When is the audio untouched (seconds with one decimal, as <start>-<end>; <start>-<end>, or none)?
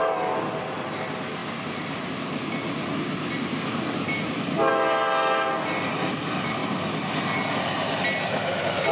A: 0.0-8.9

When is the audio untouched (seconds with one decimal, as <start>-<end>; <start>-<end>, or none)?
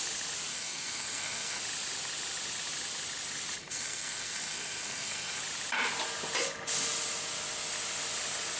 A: 0.0-0.5; 1.6-3.6; 5.4-8.6